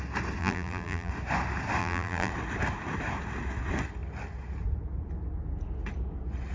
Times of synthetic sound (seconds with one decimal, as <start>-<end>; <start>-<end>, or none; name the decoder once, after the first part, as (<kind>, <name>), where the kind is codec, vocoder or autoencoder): 0.4-1.1 (vocoder, BigVGAN v2); 1.8-2.3